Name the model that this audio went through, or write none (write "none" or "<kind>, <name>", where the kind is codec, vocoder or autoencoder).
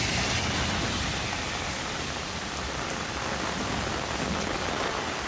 none